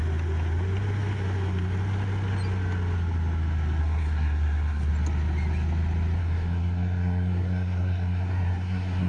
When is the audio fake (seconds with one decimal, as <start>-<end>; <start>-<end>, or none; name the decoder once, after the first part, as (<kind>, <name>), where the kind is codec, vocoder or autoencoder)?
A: 3.8-4.9 (codec, SNAC); 6.2-9.1